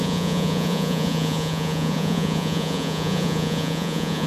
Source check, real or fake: fake